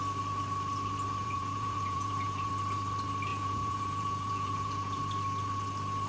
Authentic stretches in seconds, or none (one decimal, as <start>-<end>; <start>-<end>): 0.0-1.2; 2.5-3.3; 5.0-6.1